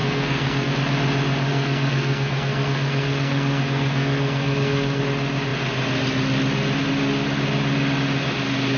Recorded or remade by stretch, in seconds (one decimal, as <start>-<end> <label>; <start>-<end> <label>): 0.0-0.7 remade; 0.7-1.5 recorded; 1.5-5.0 remade; 5.0-8.8 recorded